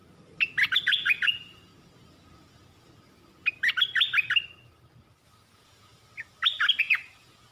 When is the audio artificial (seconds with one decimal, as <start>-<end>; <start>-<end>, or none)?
0.8-1.7; 5.5-5.9; 6.8-7.5